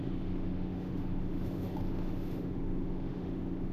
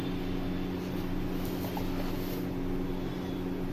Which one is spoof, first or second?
first